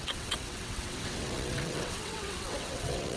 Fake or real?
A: fake